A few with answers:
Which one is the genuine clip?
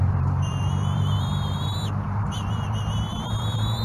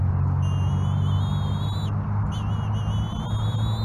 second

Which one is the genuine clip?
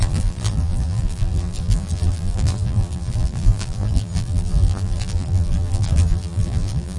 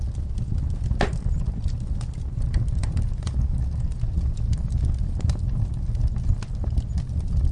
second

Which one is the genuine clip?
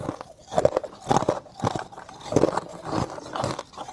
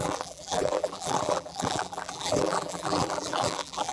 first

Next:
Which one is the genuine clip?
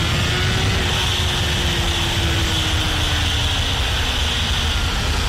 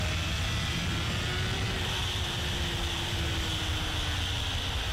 first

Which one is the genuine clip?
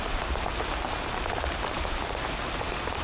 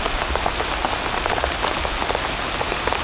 second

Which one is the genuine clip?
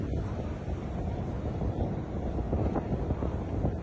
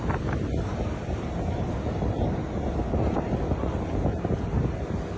second